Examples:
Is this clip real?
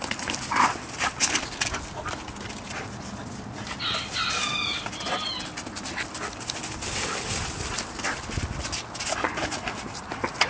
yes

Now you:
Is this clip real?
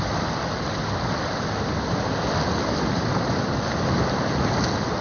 yes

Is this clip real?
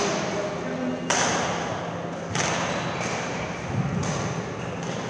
yes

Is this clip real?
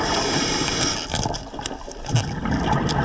yes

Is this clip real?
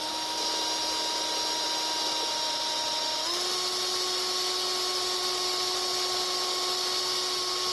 yes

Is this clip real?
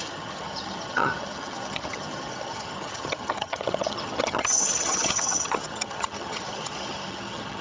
no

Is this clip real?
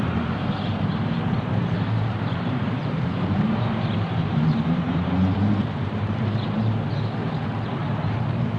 no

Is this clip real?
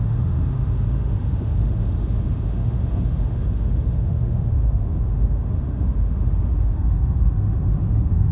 no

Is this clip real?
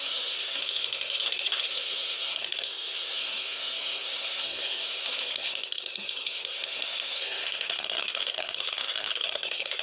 no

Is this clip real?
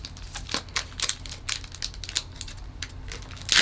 yes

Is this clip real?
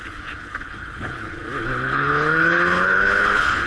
no